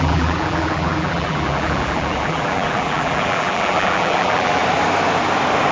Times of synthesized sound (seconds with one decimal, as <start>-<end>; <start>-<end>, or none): 0.0-4.6